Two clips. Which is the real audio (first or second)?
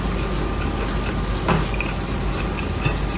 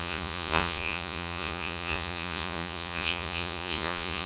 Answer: first